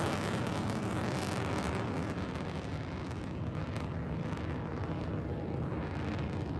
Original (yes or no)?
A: yes